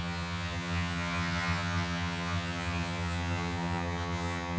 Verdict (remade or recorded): remade